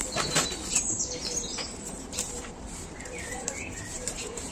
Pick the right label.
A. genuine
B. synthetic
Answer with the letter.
B